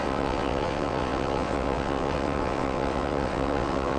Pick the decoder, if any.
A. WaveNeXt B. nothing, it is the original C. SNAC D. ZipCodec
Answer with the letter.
A